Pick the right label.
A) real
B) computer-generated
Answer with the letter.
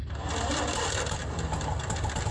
A